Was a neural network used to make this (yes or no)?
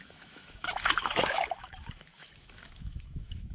yes